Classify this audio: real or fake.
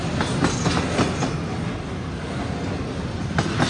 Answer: real